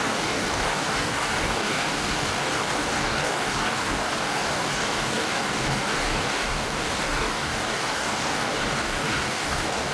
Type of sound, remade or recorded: remade